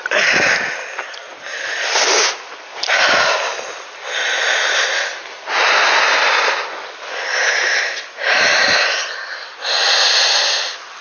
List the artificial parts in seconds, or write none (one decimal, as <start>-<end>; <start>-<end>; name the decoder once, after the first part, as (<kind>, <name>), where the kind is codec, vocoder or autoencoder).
none